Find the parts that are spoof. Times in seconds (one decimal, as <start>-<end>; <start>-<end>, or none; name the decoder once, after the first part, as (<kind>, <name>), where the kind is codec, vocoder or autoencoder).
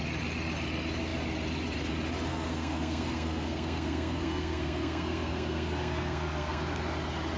2.3-6.6 (codec, SNAC)